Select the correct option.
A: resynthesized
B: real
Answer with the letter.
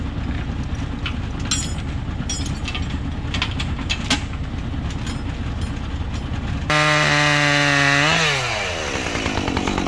B